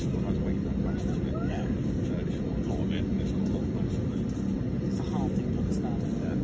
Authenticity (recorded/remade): recorded